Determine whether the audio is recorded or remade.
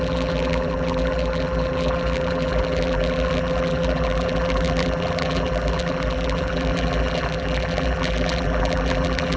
remade